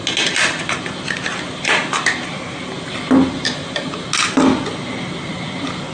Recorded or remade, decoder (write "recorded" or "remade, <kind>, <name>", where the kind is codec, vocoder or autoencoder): recorded